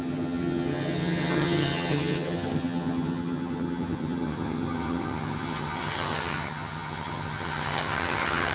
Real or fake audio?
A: fake